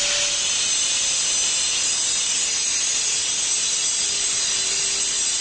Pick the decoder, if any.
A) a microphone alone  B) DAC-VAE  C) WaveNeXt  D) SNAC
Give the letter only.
A